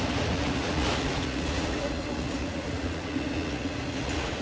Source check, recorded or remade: remade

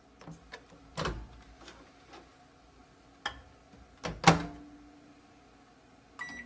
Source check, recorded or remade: recorded